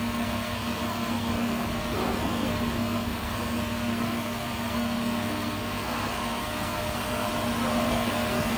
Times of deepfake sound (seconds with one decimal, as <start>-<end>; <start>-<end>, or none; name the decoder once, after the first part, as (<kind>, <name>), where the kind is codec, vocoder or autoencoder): 0.0-7.3 (codec, SNAC); 7.9-8.6